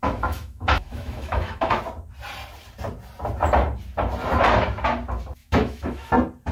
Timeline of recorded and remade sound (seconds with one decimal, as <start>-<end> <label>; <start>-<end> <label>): 0.0-1.8 remade; 1.8-5.4 recorded; 5.4-6.1 remade; 6.1-6.5 recorded